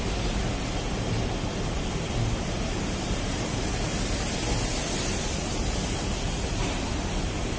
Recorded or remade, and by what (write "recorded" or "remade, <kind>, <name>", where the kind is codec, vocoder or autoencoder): recorded